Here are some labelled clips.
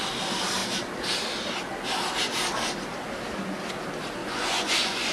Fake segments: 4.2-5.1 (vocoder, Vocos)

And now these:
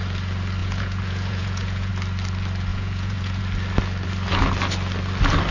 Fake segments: 0.6-1.9 (vocoder, Vocos); 2.7-3.4